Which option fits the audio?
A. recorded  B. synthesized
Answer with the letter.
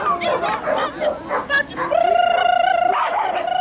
A